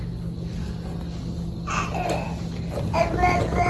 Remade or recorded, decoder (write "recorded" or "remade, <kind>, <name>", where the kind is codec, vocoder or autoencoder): recorded